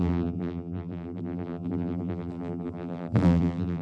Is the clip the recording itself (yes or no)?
no